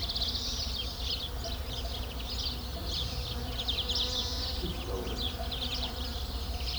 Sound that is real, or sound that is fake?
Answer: fake